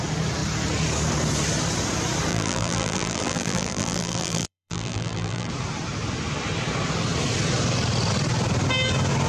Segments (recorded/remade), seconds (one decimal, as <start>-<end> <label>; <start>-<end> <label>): 0.0-2.3 recorded; 2.3-5.5 remade; 5.5-9.3 recorded